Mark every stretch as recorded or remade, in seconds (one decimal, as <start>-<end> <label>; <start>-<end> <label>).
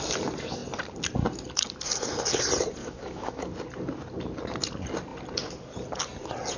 0.0-2.8 recorded; 2.8-3.5 remade; 3.5-6.6 recorded